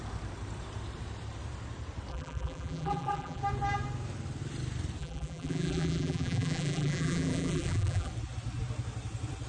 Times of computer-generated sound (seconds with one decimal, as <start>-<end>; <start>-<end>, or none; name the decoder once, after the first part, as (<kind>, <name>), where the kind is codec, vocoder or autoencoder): 2.1-3.4 (vocoder, BigVGAN v2); 5.0-8.1